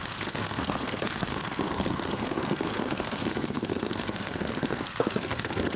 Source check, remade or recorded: remade